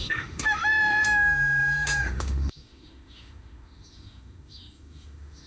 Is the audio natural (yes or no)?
no